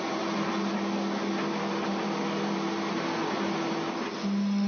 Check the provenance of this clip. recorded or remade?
recorded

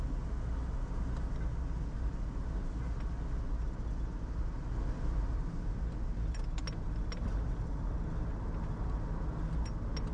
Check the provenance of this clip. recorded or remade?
recorded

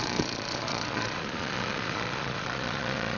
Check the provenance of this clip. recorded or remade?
remade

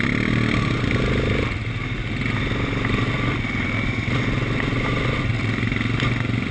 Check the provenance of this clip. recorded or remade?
recorded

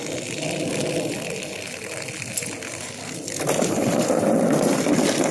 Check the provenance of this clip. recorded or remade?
recorded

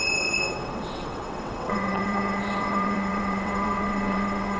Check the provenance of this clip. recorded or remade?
remade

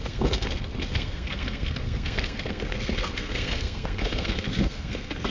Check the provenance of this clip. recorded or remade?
remade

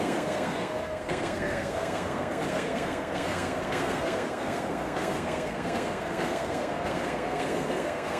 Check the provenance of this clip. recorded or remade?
remade